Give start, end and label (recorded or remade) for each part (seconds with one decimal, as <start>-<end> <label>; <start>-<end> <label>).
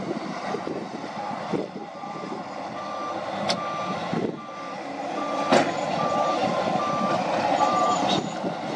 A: 0.0-1.8 remade; 1.8-5.1 recorded; 5.1-5.5 remade; 5.5-7.6 recorded; 7.6-8.8 remade